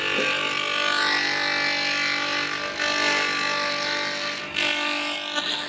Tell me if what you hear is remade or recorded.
recorded